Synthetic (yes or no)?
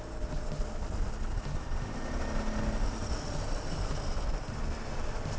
no